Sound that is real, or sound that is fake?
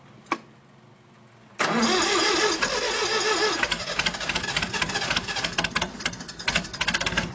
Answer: real